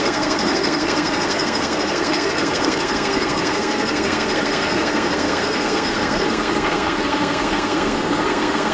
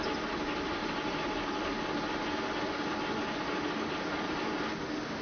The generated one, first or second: first